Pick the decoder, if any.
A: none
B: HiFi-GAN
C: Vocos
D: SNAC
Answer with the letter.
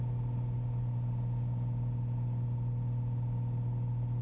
A